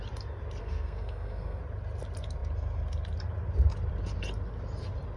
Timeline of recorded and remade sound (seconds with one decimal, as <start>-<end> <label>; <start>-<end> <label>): 0.0-0.6 recorded; 0.6-1.6 remade; 1.6-5.2 recorded